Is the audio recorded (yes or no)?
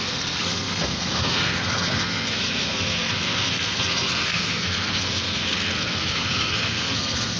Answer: no